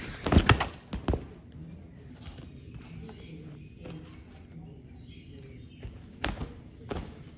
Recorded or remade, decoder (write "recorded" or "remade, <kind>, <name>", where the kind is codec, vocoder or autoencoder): recorded